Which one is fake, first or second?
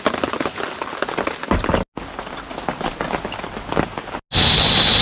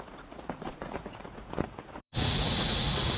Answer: second